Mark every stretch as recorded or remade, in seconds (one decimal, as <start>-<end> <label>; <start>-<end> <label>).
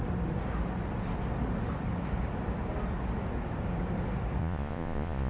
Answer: 0.0-4.4 recorded; 4.4-5.3 remade